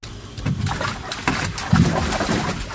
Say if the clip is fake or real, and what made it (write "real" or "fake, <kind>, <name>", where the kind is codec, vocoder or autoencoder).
real